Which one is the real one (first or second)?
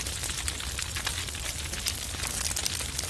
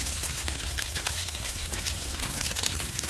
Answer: first